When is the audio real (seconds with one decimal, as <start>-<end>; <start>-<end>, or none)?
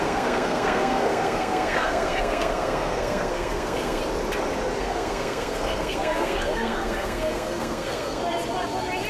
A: 4.0-4.8; 8.2-9.1